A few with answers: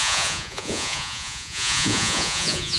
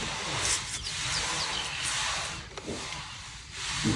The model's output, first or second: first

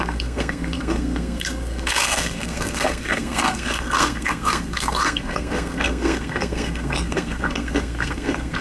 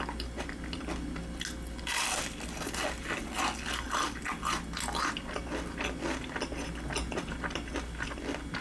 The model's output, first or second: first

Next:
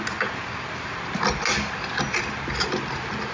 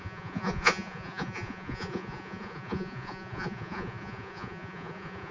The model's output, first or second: second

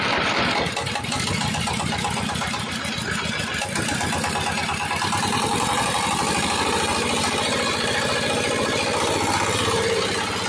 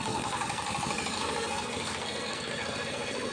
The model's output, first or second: second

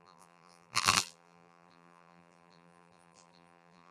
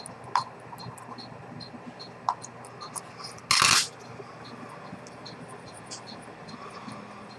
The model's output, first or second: first